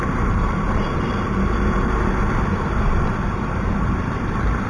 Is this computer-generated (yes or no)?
yes